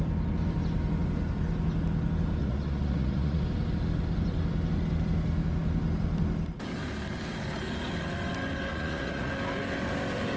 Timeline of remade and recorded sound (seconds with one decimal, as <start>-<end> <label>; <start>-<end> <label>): 0.0-2.4 recorded; 2.4-3.4 remade; 3.4-8.7 recorded; 8.7-9.3 remade; 9.3-10.4 recorded